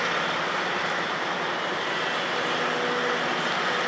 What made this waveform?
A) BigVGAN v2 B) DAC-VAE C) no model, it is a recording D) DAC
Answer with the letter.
C